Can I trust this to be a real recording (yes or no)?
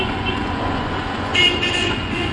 no